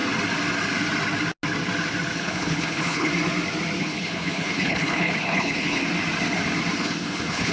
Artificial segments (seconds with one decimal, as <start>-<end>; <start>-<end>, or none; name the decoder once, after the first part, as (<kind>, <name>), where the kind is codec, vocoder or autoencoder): 2.2-3.1 (codec, HILCodec); 3.8-5.8; 6.8-7.5